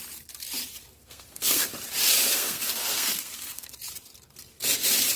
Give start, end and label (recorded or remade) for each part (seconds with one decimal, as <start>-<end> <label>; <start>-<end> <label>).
0.0-1.0 recorded; 1.0-1.7 remade; 1.7-2.3 recorded; 2.3-3.7 remade; 3.7-5.2 recorded